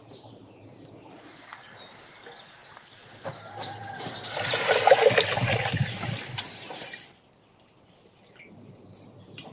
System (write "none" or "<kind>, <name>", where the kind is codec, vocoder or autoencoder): none